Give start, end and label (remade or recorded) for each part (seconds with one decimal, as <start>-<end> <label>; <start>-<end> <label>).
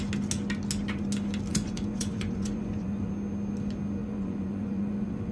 0.0-1.5 recorded; 1.5-3.1 remade; 3.1-4.0 recorded; 4.0-5.3 remade